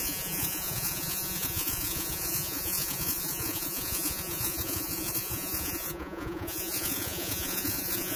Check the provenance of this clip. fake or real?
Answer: fake